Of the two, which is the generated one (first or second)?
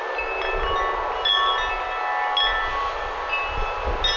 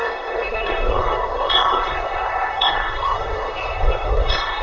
second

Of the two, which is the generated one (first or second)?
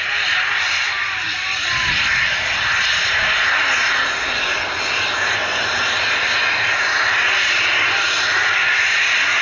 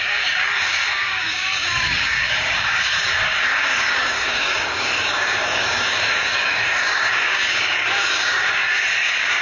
second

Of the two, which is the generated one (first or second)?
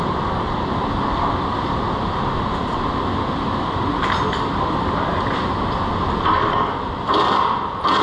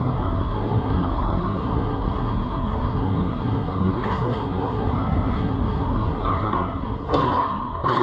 second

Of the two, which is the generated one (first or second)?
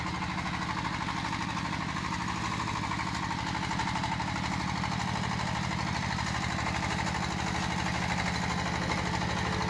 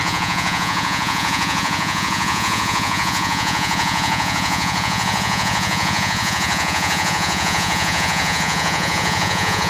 second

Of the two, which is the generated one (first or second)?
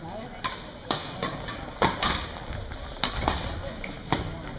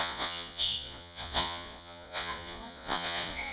second